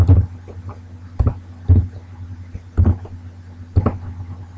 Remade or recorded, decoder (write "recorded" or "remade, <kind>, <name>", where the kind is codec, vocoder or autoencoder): recorded